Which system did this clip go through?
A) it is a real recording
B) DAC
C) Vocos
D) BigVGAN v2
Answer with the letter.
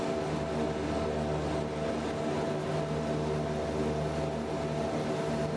A